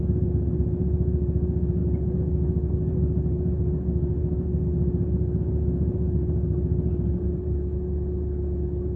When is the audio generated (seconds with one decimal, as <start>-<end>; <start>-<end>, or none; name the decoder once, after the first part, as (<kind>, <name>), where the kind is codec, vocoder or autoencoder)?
none